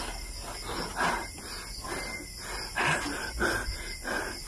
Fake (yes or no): no